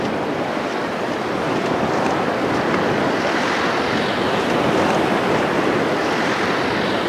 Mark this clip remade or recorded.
recorded